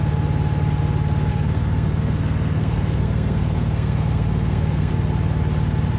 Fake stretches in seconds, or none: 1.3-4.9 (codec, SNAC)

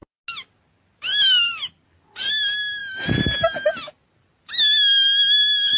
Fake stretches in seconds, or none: none

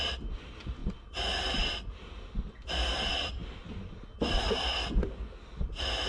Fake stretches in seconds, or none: none

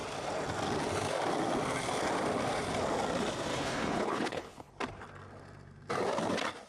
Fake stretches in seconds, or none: 3.5-4.7 (codec, HILCodec)

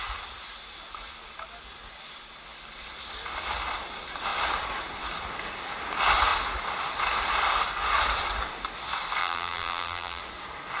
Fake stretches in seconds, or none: 9.2-10.2 (vocoder, BigVGAN v2)

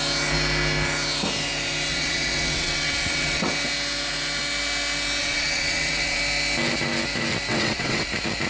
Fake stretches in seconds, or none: 1.9-3.5 (vocoder, WaveNeXt); 5.2-6.2; 7.5-8.1

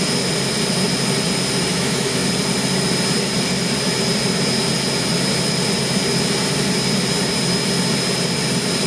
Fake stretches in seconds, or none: 1.7-2.3 (autoencoder, DAC-VAE)